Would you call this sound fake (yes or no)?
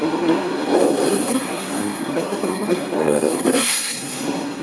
yes